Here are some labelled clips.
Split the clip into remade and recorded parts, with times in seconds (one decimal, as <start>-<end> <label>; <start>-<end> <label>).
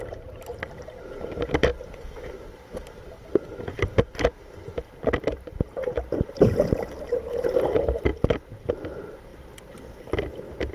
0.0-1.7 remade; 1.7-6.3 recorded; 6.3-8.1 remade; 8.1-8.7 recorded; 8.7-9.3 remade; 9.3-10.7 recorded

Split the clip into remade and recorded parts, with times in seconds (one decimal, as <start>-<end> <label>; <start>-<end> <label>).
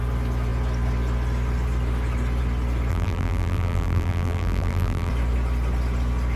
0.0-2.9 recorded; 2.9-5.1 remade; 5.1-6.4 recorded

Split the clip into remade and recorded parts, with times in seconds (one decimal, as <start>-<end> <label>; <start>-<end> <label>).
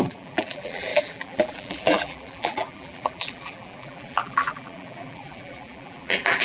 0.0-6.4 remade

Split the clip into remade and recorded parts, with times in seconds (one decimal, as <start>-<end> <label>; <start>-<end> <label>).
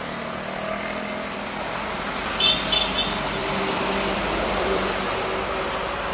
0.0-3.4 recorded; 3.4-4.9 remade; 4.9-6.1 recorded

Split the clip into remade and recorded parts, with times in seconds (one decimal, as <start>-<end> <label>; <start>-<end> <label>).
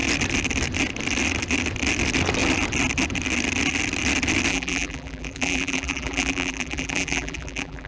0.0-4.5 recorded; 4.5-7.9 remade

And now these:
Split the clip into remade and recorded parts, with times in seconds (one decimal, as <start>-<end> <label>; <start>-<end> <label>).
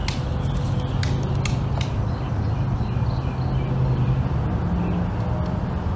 0.0-6.0 recorded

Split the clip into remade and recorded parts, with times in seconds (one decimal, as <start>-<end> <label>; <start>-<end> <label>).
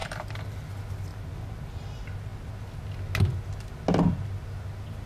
0.0-0.7 remade; 0.7-1.1 recorded; 1.1-1.8 remade; 1.8-5.1 recorded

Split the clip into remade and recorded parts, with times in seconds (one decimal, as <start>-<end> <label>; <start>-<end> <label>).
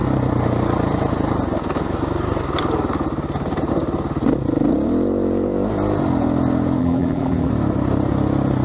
0.0-6.8 recorded; 6.8-7.5 remade; 7.5-8.6 recorded